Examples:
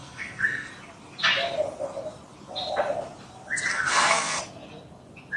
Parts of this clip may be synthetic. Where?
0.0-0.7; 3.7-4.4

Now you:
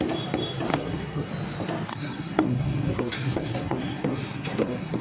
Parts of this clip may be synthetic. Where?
0.7-1.3; 1.9-5.0

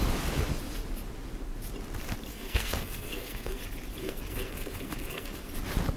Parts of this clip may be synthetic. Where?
2.3-3.6; 4.0-5.5